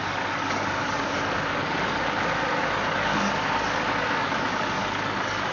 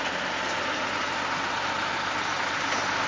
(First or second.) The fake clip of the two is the first